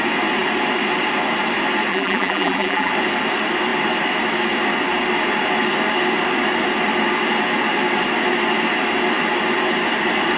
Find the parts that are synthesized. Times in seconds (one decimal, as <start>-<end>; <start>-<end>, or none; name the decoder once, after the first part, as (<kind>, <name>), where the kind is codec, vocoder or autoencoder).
1.9-2.9 (vocoder, BigVGAN v2)